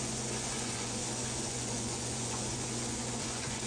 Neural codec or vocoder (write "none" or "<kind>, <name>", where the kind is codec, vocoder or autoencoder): vocoder, Vocos